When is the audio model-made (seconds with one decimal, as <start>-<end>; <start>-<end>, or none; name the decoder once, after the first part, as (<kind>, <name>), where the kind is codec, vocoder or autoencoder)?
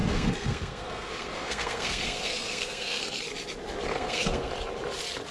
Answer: 0.0-3.2 (codec, SNAC); 3.9-4.5